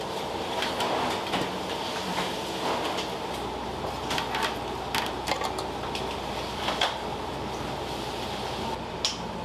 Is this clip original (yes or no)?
yes